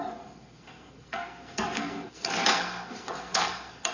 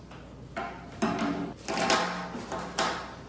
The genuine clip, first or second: second